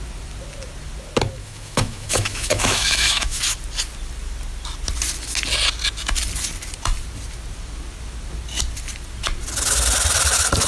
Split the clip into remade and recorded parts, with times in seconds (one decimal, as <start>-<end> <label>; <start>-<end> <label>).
0.0-1.4 recorded; 1.4-3.4 remade; 3.4-10.7 recorded